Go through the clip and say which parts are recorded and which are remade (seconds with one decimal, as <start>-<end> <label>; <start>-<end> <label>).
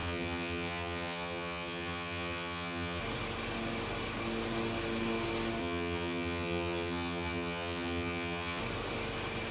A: 0.0-3.0 remade; 3.0-5.6 recorded; 5.6-8.6 remade; 8.6-9.5 recorded